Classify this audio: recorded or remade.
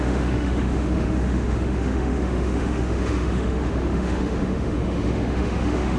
remade